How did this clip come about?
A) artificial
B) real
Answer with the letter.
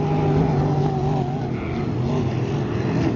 B